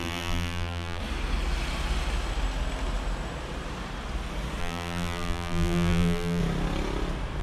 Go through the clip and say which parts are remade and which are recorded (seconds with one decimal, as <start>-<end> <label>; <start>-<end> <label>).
0.0-1.0 remade; 1.0-4.6 recorded; 4.6-6.4 remade; 6.4-7.4 recorded